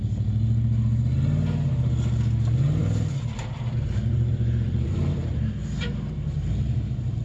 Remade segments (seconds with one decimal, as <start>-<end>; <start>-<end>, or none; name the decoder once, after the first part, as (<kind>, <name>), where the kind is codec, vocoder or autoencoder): 2.8-7.2 (vocoder, BigVGAN v2)